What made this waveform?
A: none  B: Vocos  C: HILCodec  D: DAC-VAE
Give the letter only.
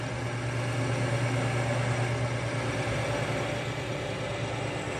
A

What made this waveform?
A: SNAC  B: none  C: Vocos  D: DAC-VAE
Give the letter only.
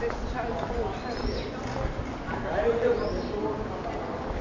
B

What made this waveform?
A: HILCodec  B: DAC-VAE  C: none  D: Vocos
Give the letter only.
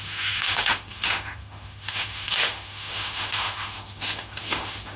B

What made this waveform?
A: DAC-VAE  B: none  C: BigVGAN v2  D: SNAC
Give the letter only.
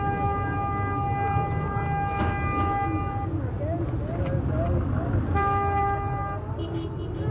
B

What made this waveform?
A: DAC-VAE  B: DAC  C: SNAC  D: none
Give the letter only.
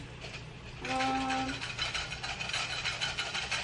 D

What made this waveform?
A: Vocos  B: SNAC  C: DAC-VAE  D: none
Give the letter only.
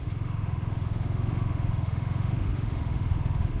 C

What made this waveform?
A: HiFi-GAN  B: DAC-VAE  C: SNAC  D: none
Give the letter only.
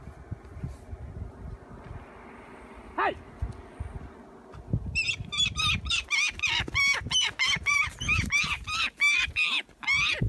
D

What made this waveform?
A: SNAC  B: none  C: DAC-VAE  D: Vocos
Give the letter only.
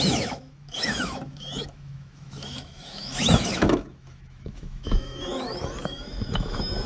C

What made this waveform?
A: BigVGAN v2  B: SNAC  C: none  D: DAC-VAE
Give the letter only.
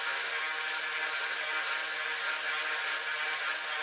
C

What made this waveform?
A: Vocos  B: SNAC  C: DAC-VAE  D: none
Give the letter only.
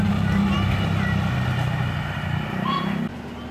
D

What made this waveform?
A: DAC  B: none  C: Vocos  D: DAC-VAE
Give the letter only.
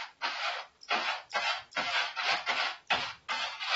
B